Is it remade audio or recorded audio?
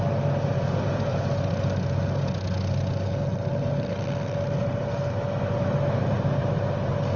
recorded